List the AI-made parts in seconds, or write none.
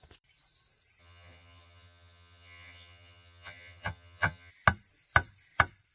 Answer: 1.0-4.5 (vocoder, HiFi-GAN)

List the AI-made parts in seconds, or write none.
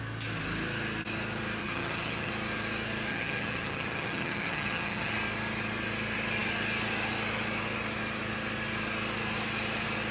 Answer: 1.6-2.3 (vocoder, HiFi-GAN); 3.1-5.1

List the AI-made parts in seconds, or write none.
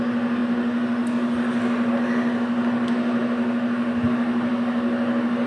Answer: none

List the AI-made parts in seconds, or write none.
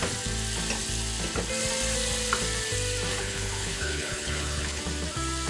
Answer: 3.1-4.8 (codec, HILCodec)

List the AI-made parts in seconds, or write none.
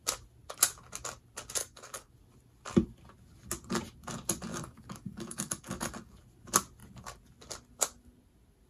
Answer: 1.6-2.1 (codec, DAC); 4.5-6.1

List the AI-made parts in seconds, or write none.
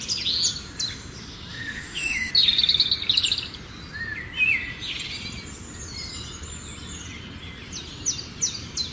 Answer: 1.5-2.3 (autoencoder, DAC-VAE)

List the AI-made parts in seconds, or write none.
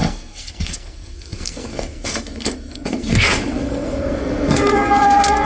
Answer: 0.0-5.4 (codec, SNAC)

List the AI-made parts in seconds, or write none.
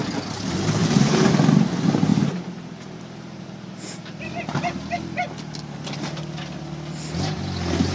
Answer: 0.8-1.3 (vocoder, BigVGAN v2); 2.1-5.0